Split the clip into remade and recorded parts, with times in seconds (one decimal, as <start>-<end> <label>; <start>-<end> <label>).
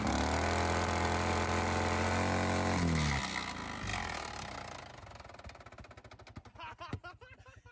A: 0.0-7.7 recorded